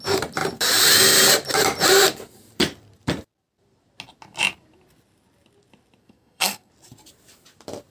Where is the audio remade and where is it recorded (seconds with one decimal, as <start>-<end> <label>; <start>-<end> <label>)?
0.0-6.0 recorded; 6.0-6.7 remade; 6.7-7.9 recorded